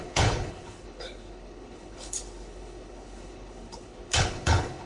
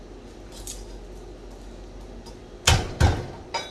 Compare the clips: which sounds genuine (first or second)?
second